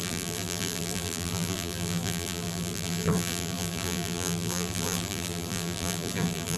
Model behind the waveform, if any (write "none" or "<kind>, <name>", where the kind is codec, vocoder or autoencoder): vocoder, BigVGAN v2